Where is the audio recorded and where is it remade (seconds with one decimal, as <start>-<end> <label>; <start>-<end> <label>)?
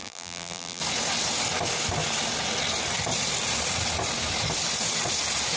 0.0-0.8 remade; 0.8-5.6 recorded